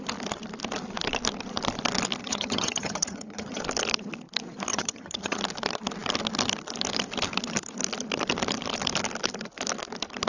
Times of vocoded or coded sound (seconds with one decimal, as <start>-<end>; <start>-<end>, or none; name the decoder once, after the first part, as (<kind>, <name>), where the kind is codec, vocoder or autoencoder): 2.2-3.6 (vocoder, HiFi-GAN); 4.7-5.4